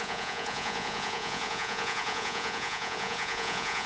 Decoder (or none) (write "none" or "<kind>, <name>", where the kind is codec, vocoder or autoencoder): vocoder, Vocos